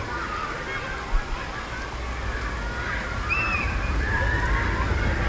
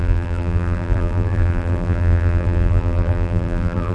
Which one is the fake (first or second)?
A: second